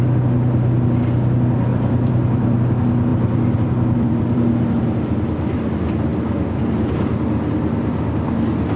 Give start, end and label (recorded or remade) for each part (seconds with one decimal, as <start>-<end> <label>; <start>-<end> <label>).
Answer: 0.0-1.7 recorded; 1.7-2.6 remade; 2.6-3.1 recorded; 3.1-4.8 remade; 4.8-6.1 recorded; 6.1-6.9 remade; 6.9-8.8 recorded